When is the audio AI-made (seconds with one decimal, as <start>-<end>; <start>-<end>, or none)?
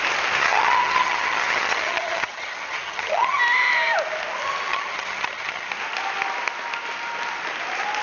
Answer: 0.4-3.4; 4.7-5.7